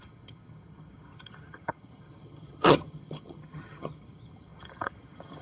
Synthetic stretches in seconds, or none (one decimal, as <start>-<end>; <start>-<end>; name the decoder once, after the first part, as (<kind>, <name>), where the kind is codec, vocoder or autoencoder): 0.0-5.4 (vocoder, HiFi-GAN)